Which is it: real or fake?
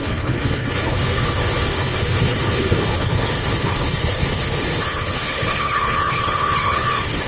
fake